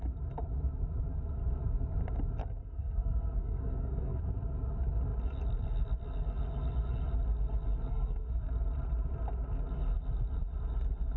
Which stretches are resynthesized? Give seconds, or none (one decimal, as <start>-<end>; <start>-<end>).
2.6-4.2; 7.9-8.5